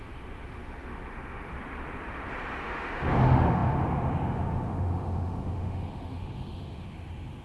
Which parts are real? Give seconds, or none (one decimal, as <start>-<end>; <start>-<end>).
1.5-2.6